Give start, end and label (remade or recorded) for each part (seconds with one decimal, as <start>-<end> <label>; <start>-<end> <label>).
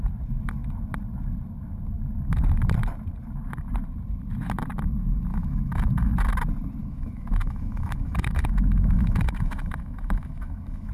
0.0-5.3 recorded; 5.3-6.1 remade; 6.1-6.8 recorded; 6.8-10.9 remade